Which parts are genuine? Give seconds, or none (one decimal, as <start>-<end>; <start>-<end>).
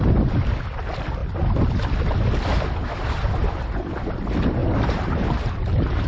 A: 0.0-2.5; 4.0-4.6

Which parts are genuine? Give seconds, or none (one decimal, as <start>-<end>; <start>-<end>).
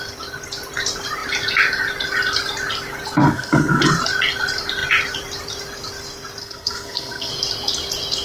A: 0.0-3.2; 3.8-6.4; 7.3-8.2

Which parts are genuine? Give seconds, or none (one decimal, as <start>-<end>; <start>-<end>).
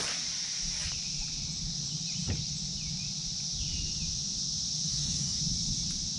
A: 0.0-4.9; 5.4-6.2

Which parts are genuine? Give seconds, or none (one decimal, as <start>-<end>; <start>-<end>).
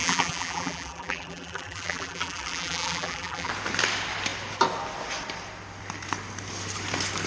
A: 3.5-7.3